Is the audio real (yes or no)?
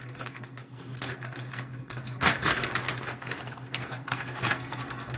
no